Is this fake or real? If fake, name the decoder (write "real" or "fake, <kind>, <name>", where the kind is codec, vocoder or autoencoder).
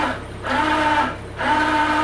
real